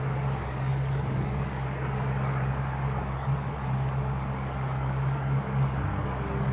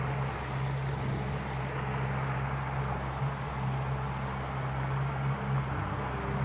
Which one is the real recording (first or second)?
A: second